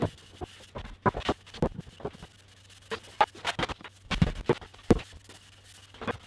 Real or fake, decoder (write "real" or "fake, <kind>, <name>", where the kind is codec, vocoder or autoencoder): real